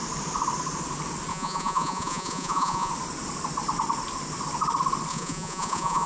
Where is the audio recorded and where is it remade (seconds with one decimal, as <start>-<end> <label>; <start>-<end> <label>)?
0.0-1.3 recorded; 1.3-2.9 remade; 2.9-5.1 recorded; 5.1-6.1 remade